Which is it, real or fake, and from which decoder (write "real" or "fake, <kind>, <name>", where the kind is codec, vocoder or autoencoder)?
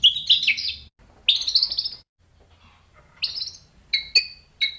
real